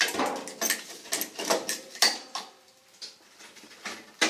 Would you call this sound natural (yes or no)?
no